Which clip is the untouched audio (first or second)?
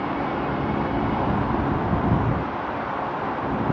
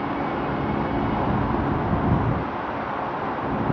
second